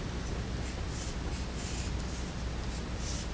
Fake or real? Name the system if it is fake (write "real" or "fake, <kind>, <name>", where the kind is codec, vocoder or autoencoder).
real